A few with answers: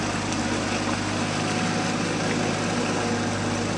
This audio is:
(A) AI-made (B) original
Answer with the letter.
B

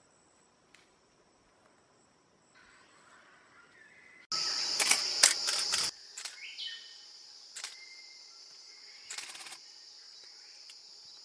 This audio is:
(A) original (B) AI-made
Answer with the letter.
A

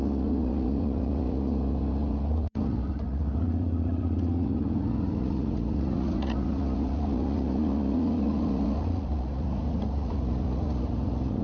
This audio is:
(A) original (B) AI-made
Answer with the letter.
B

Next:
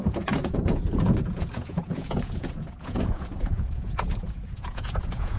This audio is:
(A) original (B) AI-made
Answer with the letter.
B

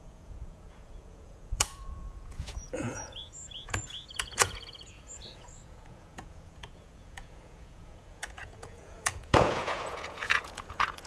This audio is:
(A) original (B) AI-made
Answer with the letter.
B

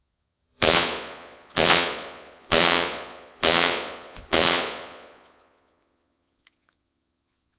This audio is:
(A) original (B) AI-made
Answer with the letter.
B